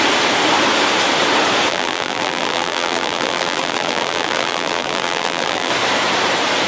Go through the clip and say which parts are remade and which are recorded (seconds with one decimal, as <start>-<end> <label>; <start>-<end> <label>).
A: 0.0-1.7 recorded; 1.7-5.7 remade; 5.7-6.7 recorded